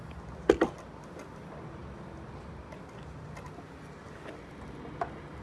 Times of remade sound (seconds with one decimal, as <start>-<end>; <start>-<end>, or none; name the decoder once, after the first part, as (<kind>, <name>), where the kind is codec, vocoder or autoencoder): none